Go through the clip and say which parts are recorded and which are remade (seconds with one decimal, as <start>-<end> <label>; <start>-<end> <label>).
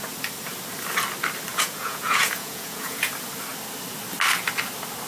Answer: 0.0-1.5 recorded; 1.5-3.1 remade; 3.1-5.1 recorded